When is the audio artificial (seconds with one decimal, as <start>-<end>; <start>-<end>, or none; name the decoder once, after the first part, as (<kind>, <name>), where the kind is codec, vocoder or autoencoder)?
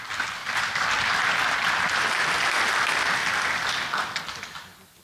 none